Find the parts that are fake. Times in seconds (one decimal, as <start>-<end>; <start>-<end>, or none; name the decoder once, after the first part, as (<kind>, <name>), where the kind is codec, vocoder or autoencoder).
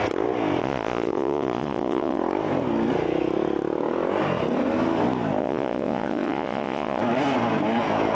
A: 0.6-2.2 (vocoder, Vocos); 5.4-7.0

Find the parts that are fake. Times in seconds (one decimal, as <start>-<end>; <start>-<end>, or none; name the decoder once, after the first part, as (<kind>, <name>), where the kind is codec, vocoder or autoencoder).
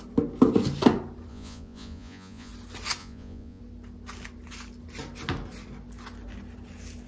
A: 1.3-2.5 (vocoder, Vocos); 3.0-3.6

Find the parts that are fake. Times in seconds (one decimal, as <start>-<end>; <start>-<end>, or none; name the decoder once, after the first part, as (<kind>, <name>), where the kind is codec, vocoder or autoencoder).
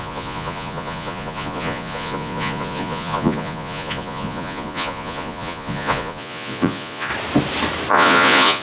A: 0.0-7.1 (vocoder, Vocos); 7.9-8.6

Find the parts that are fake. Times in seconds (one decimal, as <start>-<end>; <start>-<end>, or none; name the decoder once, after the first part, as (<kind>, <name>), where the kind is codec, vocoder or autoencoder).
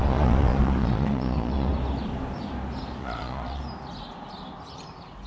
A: 0.0-1.7 (vocoder, Vocos); 3.0-3.6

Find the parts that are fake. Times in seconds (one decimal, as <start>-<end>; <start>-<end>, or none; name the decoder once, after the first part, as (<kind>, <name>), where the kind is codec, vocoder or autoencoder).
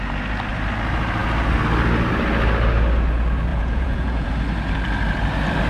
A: 3.5-4.3 (vocoder, Vocos)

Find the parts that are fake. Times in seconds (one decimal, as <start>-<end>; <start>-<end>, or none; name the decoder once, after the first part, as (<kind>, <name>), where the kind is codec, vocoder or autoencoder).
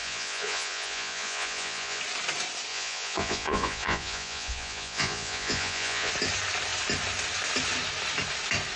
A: 0.0-2.0 (vocoder, Vocos); 2.7-6.1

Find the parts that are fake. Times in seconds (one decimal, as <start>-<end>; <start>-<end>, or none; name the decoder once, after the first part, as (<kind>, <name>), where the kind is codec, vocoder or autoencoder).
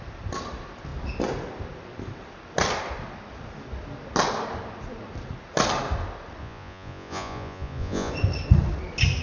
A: 6.4-8.1 (vocoder, Vocos)